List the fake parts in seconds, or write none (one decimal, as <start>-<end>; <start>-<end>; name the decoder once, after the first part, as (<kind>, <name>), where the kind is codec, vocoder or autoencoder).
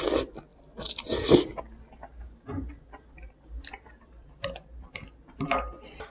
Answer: 0.5-1.6 (vocoder, BigVGAN v2); 2.1-6.1